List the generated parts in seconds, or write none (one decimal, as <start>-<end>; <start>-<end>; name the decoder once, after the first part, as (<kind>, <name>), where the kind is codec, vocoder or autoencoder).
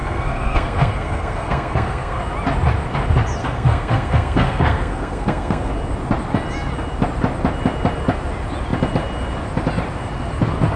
0.0-2.2 (codec, SNAC); 3.4-5.7